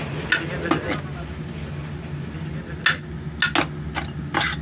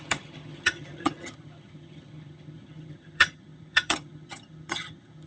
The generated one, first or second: second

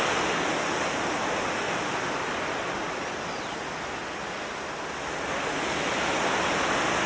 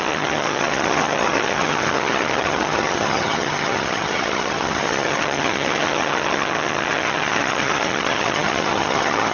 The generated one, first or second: second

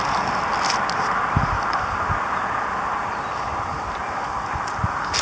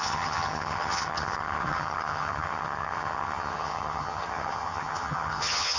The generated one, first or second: second